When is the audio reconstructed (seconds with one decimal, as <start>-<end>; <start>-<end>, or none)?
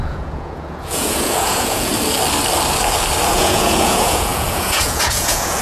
0.0-1.9; 3.3-5.6